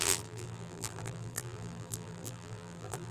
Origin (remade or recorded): remade